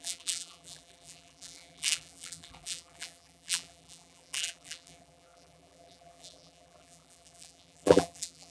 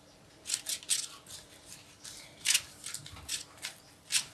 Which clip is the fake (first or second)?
first